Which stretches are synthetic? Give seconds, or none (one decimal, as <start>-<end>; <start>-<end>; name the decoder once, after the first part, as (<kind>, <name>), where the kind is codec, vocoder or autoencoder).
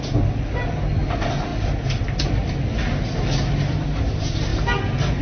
none